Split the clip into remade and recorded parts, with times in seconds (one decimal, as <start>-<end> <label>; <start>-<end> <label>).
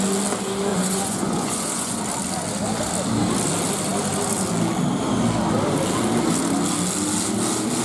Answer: 0.0-0.7 recorded; 0.7-2.0 remade; 2.0-7.8 recorded